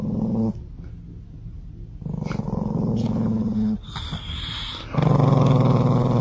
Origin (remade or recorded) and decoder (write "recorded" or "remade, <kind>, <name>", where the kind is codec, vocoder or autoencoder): recorded